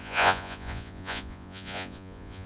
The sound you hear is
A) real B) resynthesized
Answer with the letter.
B